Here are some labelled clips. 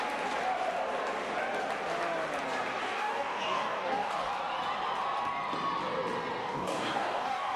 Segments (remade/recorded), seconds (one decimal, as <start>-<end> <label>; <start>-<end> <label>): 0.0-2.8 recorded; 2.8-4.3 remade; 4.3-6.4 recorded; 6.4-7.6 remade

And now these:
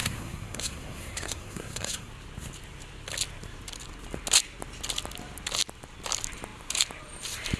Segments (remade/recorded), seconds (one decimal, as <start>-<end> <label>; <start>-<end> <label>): 0.0-2.1 remade; 2.1-7.6 recorded

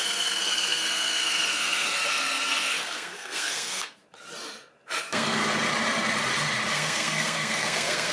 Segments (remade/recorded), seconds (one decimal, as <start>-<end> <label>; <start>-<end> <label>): 0.0-4.0 remade; 4.0-5.0 recorded; 5.0-5.4 remade; 5.4-6.7 recorded; 6.7-8.1 remade